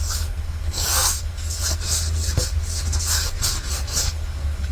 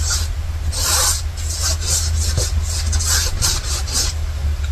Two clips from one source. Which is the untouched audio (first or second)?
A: second